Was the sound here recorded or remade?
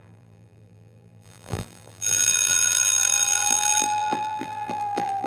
remade